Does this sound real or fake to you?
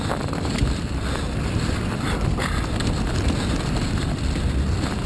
real